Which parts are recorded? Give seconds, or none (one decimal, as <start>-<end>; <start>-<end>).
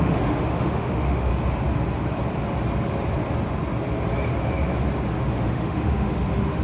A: 1.3-5.3